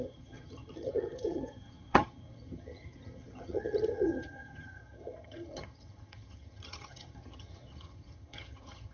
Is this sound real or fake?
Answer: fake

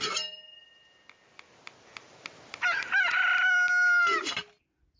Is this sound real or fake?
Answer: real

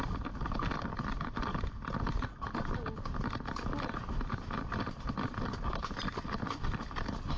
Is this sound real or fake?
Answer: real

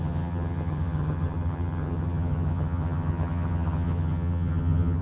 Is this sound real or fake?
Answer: fake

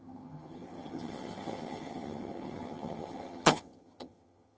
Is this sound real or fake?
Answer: fake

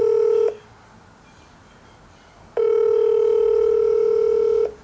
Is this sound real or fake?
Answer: real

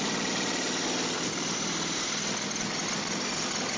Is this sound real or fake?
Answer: real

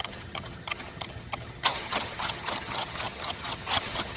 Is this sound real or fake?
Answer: fake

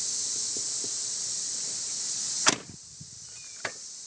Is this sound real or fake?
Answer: real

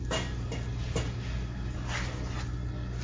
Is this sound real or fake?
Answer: real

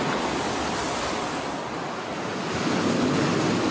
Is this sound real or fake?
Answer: real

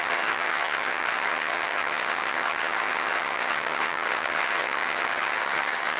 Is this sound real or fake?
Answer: fake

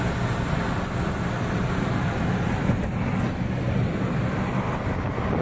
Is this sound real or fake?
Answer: real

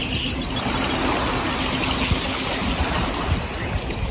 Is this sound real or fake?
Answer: real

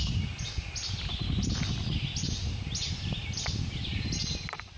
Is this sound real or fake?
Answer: real